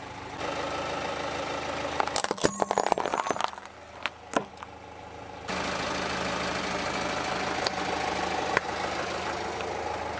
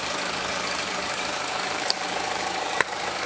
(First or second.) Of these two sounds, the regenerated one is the second